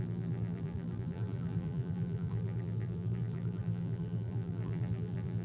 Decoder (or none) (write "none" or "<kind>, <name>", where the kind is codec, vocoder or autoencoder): vocoder, BigVGAN v2